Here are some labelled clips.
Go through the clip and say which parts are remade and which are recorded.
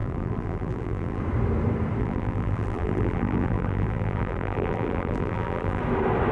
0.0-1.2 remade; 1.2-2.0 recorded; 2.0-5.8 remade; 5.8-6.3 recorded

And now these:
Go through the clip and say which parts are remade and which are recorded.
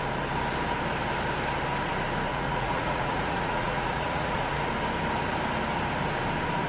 0.0-2.3 recorded; 2.3-4.7 remade; 4.7-6.7 recorded